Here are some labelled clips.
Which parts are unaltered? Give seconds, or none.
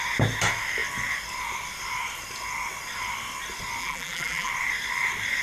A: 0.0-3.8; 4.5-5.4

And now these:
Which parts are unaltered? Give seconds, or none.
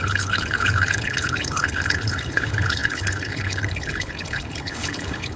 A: none